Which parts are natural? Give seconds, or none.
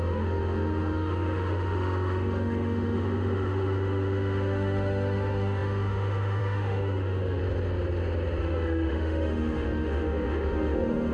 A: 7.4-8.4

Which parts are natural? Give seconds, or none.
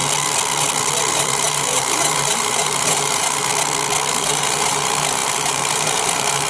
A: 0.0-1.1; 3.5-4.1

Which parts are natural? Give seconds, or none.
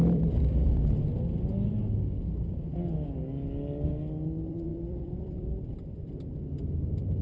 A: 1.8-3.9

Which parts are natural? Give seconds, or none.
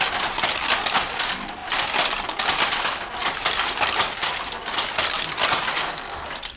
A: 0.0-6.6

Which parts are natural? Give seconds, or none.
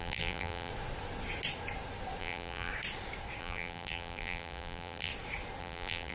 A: 0.7-2.2; 2.7-3.4; 5.1-5.6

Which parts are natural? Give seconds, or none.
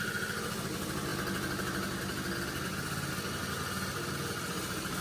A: 0.0-5.0